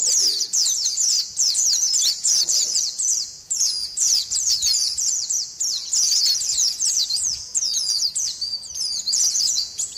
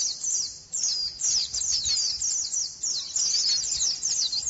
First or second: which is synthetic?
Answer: first